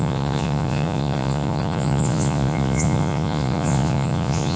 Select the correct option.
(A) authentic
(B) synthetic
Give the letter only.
B